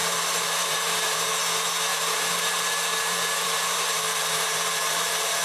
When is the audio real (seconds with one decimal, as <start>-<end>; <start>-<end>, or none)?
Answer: 1.3-1.9